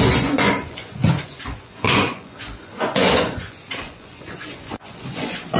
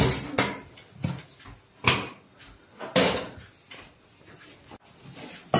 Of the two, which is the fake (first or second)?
first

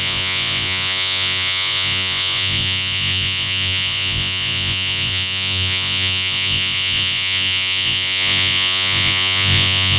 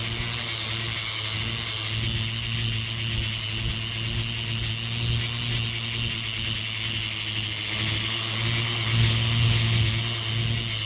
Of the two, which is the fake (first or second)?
first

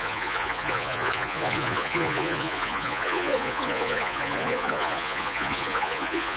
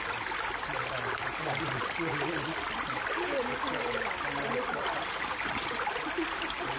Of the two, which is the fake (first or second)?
first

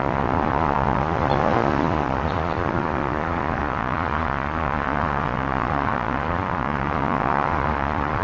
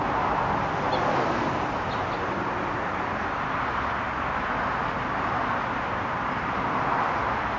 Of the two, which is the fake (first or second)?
first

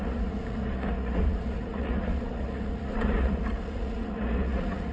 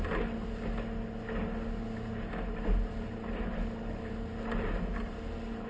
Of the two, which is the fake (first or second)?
first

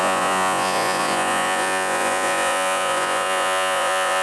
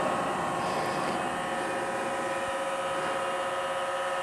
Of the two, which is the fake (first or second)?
first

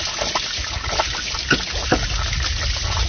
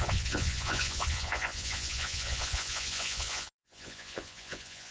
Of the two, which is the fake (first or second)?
second